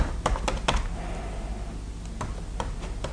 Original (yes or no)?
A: yes